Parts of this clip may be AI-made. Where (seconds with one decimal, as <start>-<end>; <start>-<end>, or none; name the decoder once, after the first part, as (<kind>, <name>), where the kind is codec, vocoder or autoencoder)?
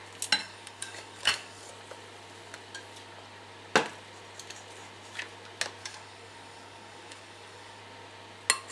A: 0.4-1.7 (codec, DAC); 5.8-7.8